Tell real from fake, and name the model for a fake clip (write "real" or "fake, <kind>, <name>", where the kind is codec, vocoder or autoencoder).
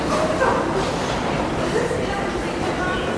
real